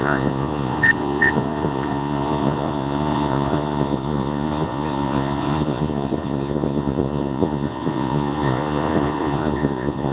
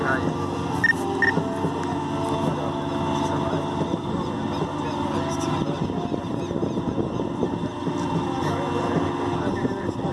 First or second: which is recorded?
second